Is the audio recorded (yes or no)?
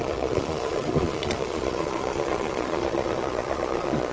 no